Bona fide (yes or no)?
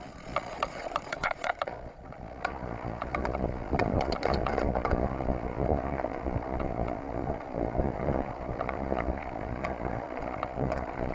no